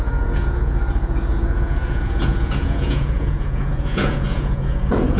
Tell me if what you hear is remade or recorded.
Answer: remade